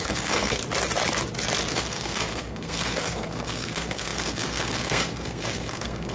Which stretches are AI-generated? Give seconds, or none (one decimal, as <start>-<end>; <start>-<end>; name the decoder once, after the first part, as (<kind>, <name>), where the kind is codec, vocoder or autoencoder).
0.0-0.6 (codec, SNAC); 1.7-6.1